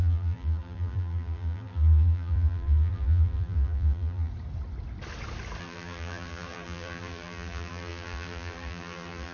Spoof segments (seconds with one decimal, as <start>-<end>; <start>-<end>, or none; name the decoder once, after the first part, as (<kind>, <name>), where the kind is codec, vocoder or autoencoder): 0.0-4.3 (vocoder, BigVGAN v2); 5.6-9.3